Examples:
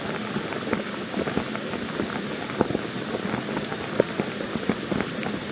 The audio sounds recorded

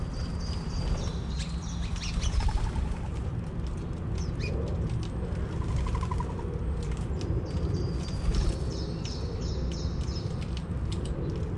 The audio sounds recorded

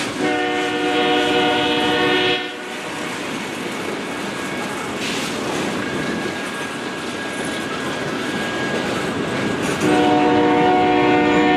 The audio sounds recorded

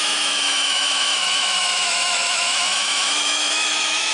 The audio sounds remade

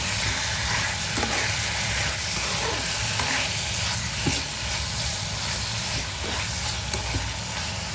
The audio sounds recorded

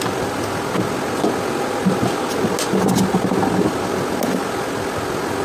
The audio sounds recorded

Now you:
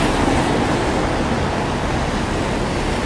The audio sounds recorded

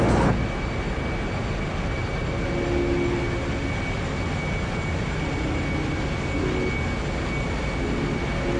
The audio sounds recorded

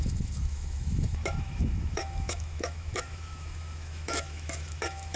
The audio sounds remade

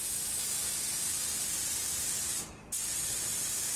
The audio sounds recorded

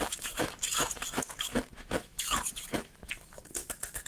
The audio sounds remade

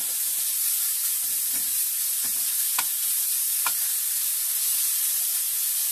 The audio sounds recorded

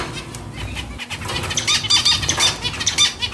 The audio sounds recorded